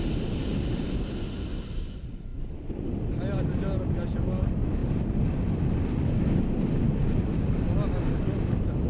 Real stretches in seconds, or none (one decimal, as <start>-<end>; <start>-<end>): 0.0-8.9